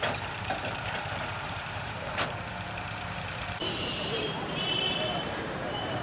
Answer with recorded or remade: remade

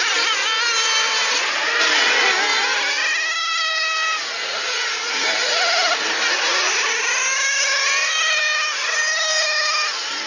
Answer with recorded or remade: recorded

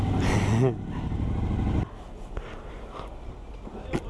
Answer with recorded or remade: recorded